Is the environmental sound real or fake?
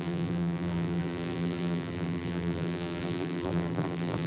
fake